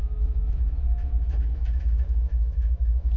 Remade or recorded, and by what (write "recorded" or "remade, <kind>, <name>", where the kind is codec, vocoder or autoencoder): remade, autoencoder, DAC-VAE